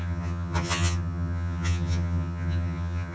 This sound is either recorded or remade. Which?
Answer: remade